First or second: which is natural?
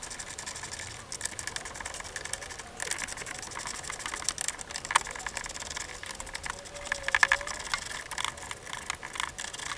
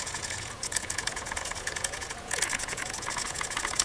first